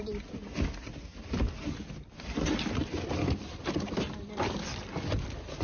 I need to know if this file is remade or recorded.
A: recorded